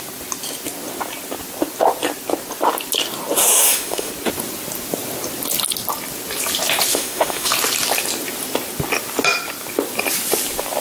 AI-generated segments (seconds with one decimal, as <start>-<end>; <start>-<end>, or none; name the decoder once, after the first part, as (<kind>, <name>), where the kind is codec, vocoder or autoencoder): 3.4-4.1 (autoencoder, DAC-VAE); 6.9-7.5